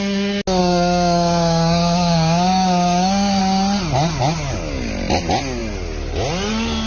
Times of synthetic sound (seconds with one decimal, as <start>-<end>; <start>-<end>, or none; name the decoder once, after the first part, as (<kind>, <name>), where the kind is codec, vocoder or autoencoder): 0.6-3.4 (codec, DAC)

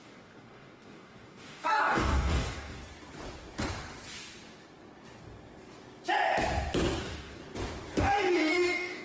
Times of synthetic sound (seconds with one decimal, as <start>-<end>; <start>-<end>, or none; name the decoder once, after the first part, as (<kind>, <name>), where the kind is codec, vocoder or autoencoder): 0.0-2.8 (codec, DAC); 7.0-7.4; 8.0-9.0

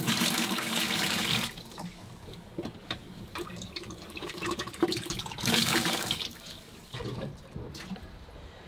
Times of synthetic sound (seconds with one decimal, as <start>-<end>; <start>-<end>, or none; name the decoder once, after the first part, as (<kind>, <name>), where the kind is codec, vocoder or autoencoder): 0.0-7.3 (codec, DAC)